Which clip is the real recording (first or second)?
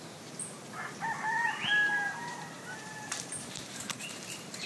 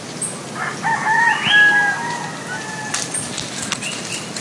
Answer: second